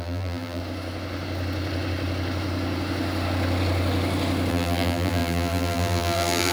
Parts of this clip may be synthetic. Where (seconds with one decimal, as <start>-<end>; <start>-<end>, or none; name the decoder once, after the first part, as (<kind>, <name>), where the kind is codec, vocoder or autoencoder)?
0.0-0.6 (vocoder, BigVGAN v2); 4.5-6.5